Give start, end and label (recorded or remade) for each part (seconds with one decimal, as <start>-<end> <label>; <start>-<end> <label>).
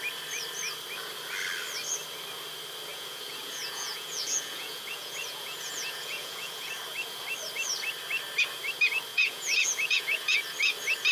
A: 0.0-2.9 recorded; 2.9-6.7 remade; 6.7-9.1 recorded; 9.1-10.4 remade; 10.4-11.1 recorded